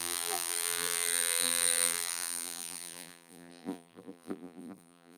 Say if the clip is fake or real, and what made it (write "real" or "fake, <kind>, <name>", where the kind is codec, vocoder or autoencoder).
fake, vocoder, BigVGAN v2